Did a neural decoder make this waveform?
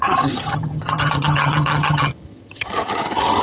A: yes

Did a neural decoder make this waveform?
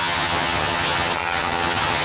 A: yes